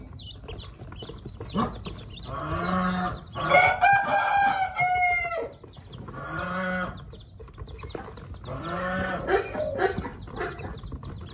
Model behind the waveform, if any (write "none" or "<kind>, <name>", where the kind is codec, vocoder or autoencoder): none